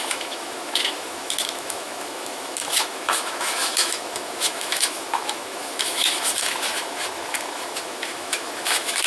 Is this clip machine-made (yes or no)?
yes